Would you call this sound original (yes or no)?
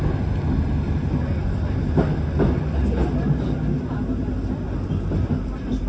yes